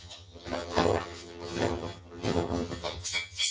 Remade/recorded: remade